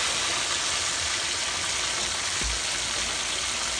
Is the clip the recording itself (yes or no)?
yes